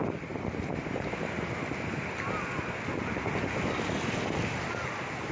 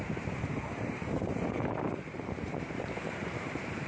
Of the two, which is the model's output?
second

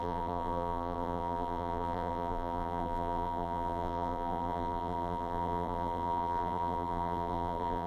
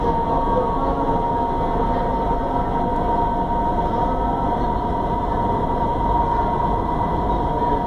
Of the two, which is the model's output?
first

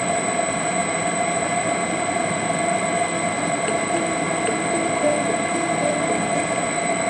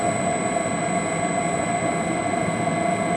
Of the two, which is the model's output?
first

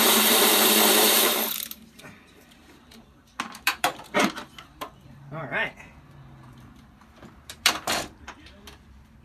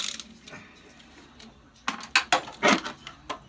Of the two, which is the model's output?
first